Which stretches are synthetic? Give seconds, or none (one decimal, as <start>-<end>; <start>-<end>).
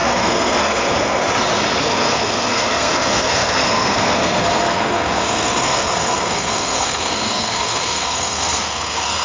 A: 0.0-1.2; 1.8-9.2